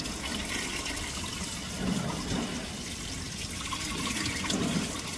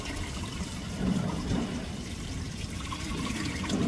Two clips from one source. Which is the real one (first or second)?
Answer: first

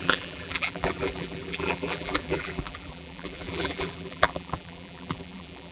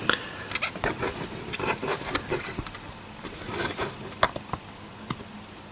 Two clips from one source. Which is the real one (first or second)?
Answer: second